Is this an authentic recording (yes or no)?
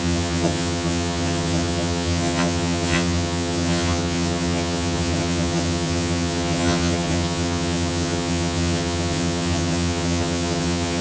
no